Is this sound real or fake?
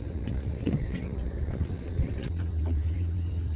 fake